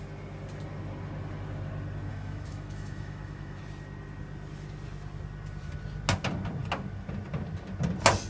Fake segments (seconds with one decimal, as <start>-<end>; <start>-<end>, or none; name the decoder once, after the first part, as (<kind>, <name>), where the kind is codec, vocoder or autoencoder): 2.1-3.6 (autoencoder, DAC-VAE)